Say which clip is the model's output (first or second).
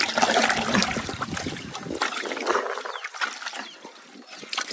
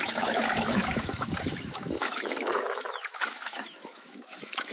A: second